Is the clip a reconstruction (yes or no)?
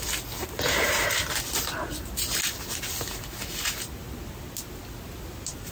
no